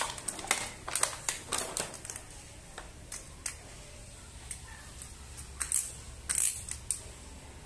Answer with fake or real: real